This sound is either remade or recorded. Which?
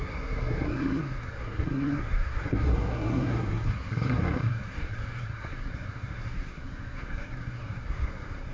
remade